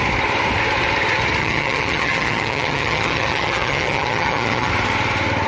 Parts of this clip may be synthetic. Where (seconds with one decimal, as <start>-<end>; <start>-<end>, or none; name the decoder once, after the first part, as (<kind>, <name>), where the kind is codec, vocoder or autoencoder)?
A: 1.4-4.7 (vocoder, HiFi-GAN)